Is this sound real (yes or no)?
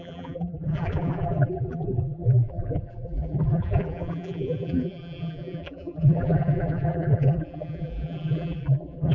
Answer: no